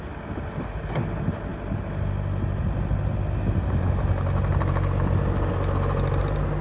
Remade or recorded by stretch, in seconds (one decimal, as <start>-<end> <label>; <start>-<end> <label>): 0.0-6.6 recorded

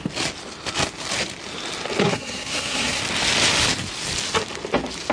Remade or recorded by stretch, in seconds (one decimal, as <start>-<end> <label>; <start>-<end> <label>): 0.0-2.0 recorded; 2.0-3.0 remade; 3.0-5.1 recorded

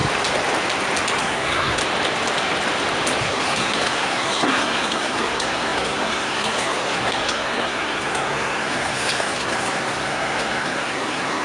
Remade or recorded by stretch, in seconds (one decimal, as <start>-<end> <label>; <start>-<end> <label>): 0.0-1.2 recorded; 1.2-1.8 remade; 1.8-3.2 recorded; 3.2-11.4 remade